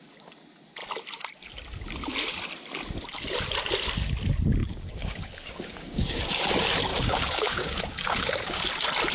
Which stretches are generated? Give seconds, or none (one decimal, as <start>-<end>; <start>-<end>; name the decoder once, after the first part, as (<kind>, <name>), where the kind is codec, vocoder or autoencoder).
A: 4.6-6.5 (codec, DAC); 6.9-8.6